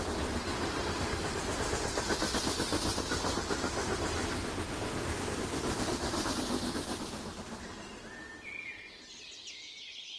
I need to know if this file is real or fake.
real